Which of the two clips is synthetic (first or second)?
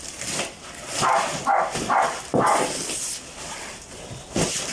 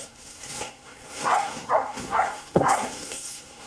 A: second